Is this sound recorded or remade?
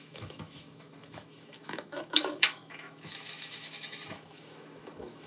remade